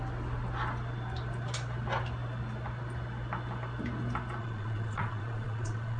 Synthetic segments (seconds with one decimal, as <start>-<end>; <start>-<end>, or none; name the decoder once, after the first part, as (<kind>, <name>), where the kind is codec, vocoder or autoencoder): 4.4-6.0 (vocoder, Vocos)